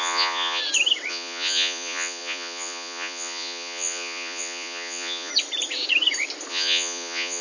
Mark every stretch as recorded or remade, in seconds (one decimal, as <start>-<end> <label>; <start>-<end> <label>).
0.0-0.6 remade; 0.6-1.1 recorded; 1.1-5.3 remade; 5.3-6.5 recorded; 6.5-7.4 remade